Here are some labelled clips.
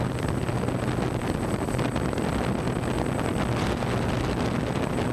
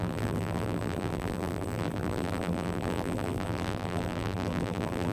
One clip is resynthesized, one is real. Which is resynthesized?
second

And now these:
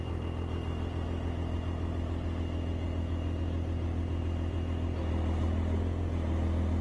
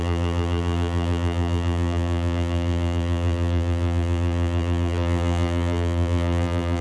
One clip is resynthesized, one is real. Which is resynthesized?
second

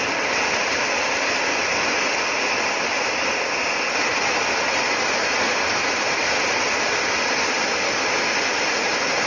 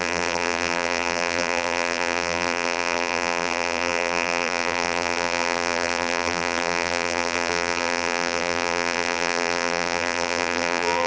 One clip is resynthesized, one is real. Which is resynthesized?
second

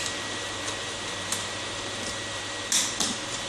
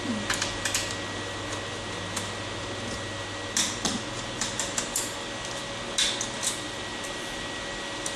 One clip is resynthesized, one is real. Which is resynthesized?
first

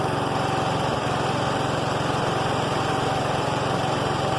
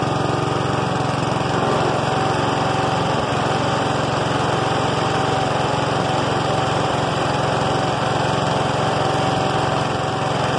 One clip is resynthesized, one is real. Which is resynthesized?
first